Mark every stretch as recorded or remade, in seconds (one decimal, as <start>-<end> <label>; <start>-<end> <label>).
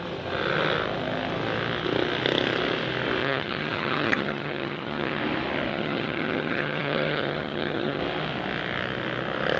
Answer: 0.0-3.2 recorded; 3.2-5.2 remade; 5.2-5.7 recorded; 5.7-8.0 remade; 8.0-9.6 recorded